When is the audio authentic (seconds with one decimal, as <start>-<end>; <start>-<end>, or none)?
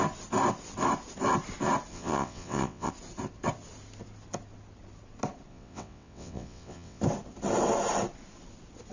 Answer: 0.0-1.9; 2.9-5.5; 7.0-8.9